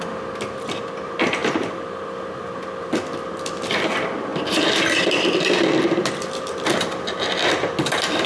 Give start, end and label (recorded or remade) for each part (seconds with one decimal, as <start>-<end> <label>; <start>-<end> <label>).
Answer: 0.0-8.3 recorded